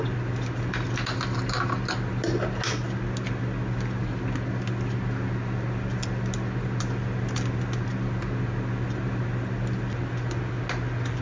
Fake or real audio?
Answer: real